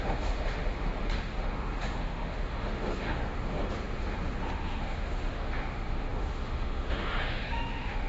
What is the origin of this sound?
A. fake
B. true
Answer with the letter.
A